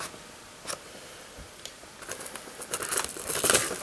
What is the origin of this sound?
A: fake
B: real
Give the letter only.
B